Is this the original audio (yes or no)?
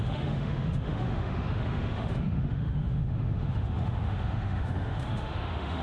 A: no